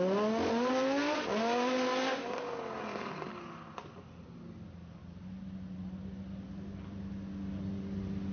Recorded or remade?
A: recorded